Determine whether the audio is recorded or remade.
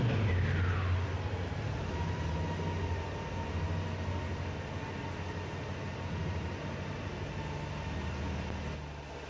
recorded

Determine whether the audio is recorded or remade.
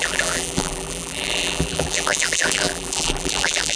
remade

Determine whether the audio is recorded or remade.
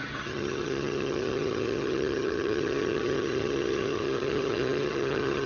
remade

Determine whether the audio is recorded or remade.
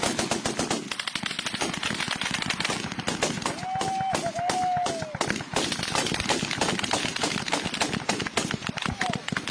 recorded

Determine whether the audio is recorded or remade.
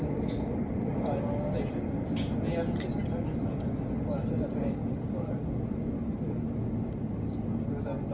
recorded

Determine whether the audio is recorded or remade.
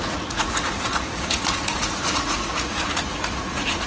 remade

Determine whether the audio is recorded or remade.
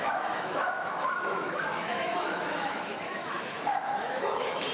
remade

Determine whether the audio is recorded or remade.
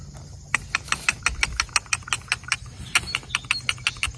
recorded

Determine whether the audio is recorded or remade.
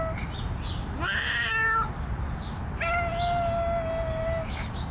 recorded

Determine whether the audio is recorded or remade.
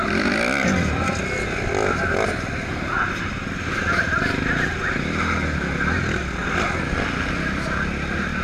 recorded